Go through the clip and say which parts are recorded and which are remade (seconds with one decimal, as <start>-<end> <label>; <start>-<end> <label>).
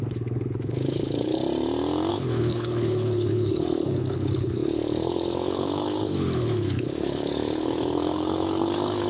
0.0-1.4 remade; 1.4-2.1 recorded; 2.1-9.1 remade